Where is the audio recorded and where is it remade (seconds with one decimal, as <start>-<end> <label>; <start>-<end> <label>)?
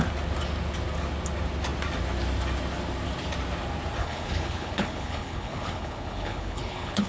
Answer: 0.0-4.0 recorded; 4.0-7.1 remade